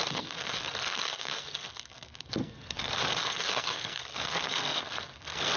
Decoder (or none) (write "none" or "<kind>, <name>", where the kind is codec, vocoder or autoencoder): codec, SNAC